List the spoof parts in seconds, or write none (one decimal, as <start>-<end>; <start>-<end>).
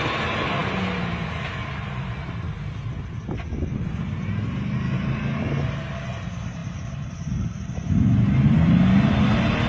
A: 6.6-7.9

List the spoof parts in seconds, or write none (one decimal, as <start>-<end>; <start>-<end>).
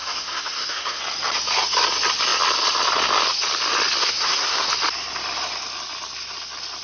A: 0.0-1.0; 4.0-4.7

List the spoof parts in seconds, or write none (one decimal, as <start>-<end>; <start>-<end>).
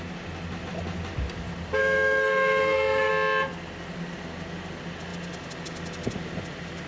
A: 1.8-3.1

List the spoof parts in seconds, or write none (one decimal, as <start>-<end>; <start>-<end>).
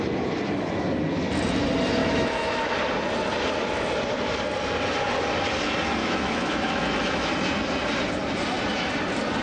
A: 2.0-2.7; 6.0-7.3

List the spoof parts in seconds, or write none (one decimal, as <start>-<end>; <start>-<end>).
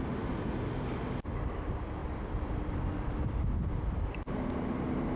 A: none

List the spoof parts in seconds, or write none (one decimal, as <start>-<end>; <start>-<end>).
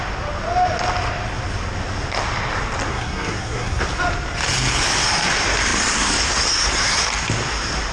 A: 2.9-3.8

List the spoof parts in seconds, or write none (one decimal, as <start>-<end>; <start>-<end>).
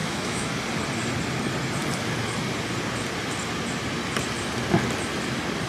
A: 0.0-0.5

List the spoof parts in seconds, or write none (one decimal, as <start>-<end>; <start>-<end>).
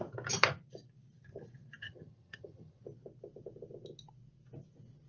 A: 1.8-2.8